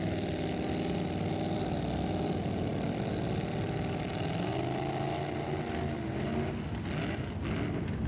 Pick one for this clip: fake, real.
real